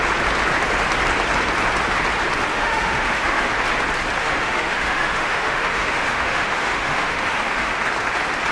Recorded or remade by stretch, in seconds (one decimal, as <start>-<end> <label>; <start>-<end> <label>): 0.0-2.5 recorded; 2.5-3.5 remade; 3.5-4.2 recorded; 4.2-7.7 remade; 7.7-8.5 recorded